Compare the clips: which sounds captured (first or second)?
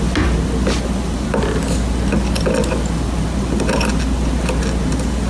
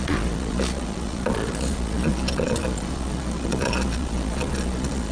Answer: first